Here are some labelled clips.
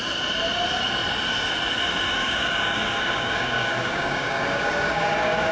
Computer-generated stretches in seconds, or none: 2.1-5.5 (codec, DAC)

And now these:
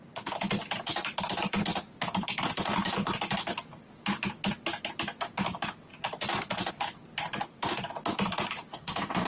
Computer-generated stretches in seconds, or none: 8.7-9.3 (codec, DAC)